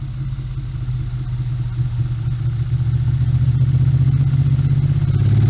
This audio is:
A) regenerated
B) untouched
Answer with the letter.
B